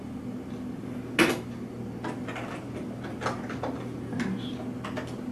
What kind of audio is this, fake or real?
real